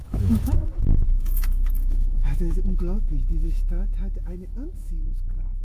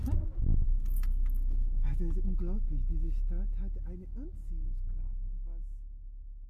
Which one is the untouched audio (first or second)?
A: second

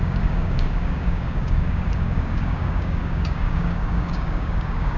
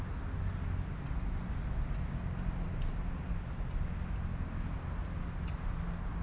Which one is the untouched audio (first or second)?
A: second